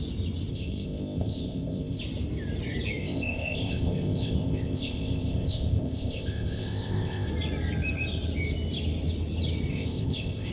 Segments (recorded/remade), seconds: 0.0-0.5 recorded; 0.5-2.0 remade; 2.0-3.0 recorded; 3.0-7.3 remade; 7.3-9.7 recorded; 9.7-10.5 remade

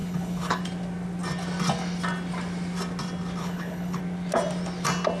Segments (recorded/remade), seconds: 0.0-0.6 remade; 0.6-3.4 recorded; 3.4-4.0 remade; 4.0-5.2 recorded

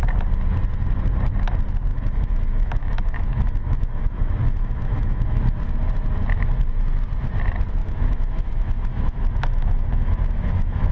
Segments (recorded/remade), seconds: 0.0-1.9 recorded; 1.9-5.4 remade; 5.4-7.8 recorded; 7.8-10.9 remade

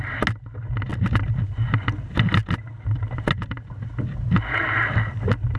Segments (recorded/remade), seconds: 0.0-5.6 recorded

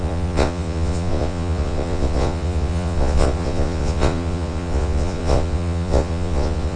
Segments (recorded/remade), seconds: 0.0-6.8 remade

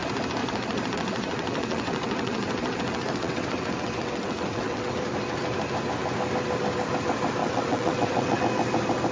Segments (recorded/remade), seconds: 0.0-0.4 recorded; 0.4-4.9 remade; 4.9-7.4 recorded; 7.4-8.4 remade; 8.4-9.1 recorded

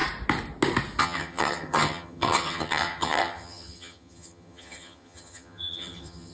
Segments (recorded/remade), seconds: 0.0-1.0 recorded; 1.0-6.3 remade